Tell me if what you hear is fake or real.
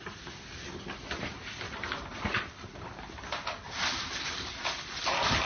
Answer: real